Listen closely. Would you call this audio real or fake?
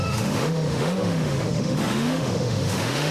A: fake